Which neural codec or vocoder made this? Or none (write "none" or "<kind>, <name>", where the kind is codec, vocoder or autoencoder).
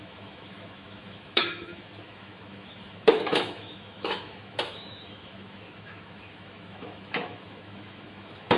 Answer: autoencoder, DAC-VAE